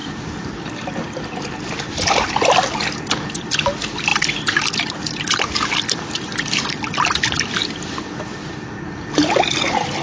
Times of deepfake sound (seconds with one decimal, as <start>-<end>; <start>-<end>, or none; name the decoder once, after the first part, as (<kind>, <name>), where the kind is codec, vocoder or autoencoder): none